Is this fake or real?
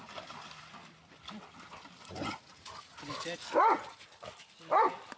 fake